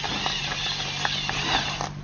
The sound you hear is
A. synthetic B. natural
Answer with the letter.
B